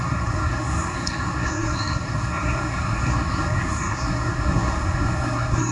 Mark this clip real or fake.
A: fake